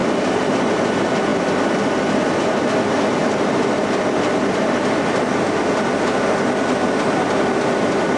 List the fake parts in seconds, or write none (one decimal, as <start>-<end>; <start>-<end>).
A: 0.0-0.6; 3.2-6.0